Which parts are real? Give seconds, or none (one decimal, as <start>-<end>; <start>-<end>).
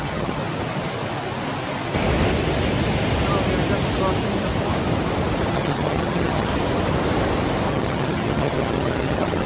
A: 0.4-5.5; 6.5-7.7